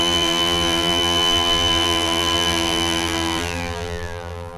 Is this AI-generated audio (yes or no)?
yes